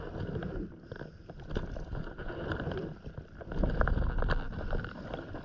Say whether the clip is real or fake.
real